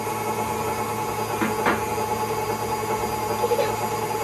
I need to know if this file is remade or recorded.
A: recorded